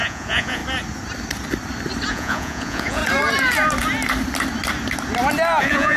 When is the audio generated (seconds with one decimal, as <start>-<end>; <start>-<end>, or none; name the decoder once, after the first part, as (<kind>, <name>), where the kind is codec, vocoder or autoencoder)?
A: 0.0-0.6 (vocoder, Vocos); 2.1-3.0; 5.6-6.0